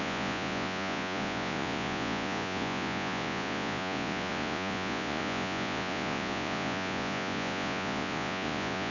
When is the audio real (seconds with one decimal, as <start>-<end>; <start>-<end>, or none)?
none